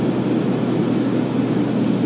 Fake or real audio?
real